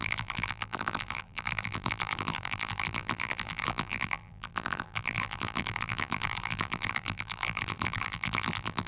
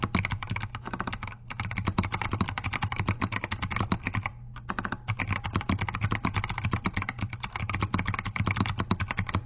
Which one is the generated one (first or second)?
first